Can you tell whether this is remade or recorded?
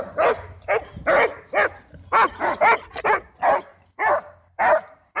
recorded